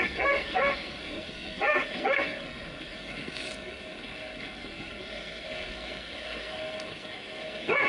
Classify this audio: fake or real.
fake